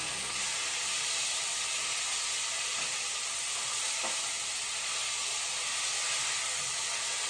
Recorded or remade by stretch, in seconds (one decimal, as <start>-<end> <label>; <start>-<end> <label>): 0.0-7.3 recorded